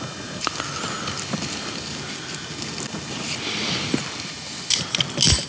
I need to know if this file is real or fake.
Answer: real